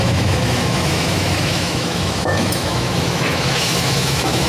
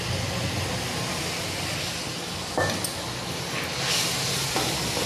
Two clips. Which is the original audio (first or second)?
second